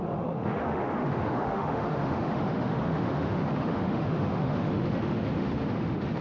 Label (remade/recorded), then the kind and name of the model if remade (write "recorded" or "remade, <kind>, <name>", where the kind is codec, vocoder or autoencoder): remade, autoencoder, DAC-VAE